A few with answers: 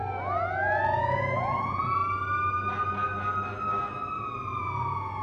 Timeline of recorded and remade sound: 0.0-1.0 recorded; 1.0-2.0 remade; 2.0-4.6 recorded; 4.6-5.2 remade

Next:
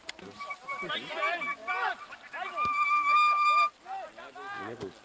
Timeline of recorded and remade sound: 0.0-5.0 recorded